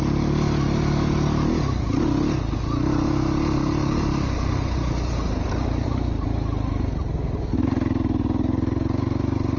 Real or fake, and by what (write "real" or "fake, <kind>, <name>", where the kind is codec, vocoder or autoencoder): real